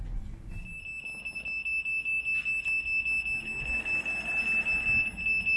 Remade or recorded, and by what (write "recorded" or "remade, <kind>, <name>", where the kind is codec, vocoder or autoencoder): recorded